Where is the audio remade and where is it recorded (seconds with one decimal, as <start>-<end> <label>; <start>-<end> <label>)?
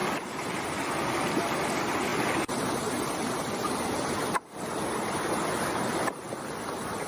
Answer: 0.0-2.1 remade; 2.1-6.4 recorded; 6.4-7.1 remade